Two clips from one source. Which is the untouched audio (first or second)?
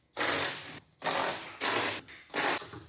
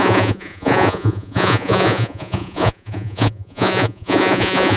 first